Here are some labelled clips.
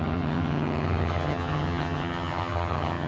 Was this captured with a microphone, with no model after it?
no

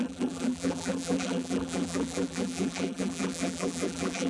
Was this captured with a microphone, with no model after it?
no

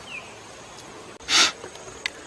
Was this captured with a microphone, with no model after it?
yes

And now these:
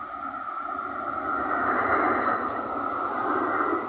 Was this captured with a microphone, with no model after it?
yes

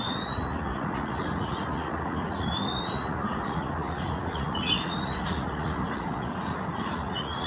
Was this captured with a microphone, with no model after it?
no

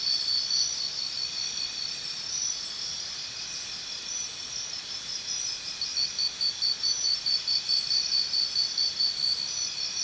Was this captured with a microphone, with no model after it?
yes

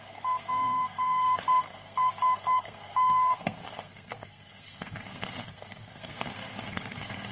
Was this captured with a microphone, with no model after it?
no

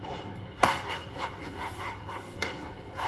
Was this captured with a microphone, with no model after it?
no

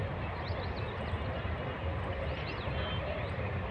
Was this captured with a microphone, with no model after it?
yes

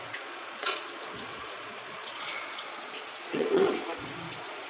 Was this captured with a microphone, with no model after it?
no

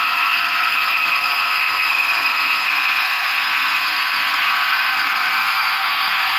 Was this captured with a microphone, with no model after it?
no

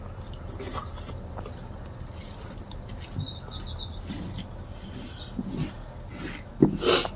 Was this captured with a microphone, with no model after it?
yes